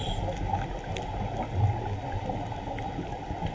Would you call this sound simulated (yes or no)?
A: no